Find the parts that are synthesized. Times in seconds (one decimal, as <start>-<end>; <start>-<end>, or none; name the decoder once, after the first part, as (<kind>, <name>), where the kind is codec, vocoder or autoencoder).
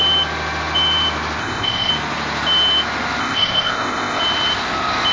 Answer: 1.4-1.9 (codec, ZipCodec); 3.2-4.2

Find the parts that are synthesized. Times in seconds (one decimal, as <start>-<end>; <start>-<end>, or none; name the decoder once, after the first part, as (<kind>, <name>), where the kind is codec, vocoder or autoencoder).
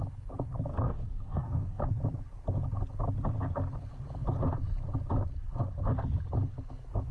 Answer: 0.7-1.8 (codec, SNAC)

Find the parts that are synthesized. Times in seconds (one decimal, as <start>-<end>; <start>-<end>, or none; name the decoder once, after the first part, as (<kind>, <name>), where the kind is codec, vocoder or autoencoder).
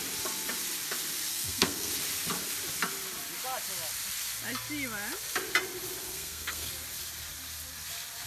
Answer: 1.3-1.9 (codec, SNAC); 6.0-6.7